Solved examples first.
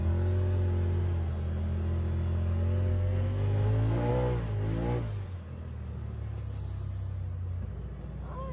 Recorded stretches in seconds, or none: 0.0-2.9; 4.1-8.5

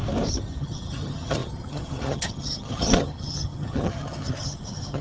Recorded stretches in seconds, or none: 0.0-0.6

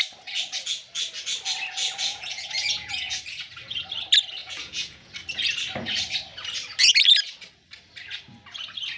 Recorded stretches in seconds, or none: 0.0-2.1; 3.2-4.4; 5.1-9.0

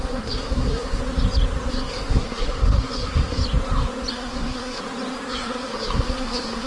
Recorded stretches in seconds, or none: 1.0-1.7; 3.4-4.1; 4.8-5.3

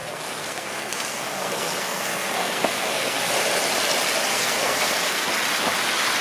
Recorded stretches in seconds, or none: 3.3-4.3; 5.3-6.2

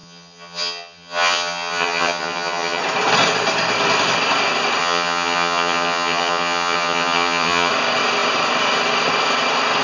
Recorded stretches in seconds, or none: 2.8-4.8; 7.7-9.8